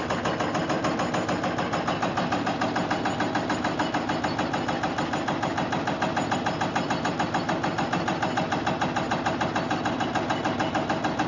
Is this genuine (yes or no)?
yes